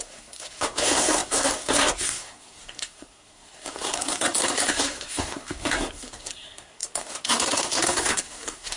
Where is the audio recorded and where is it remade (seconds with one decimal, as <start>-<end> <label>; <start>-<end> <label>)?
0.0-8.8 remade